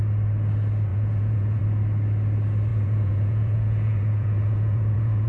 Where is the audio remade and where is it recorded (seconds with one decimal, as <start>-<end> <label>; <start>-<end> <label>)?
0.0-0.9 recorded; 0.9-1.6 remade; 1.6-2.7 recorded; 2.7-5.3 remade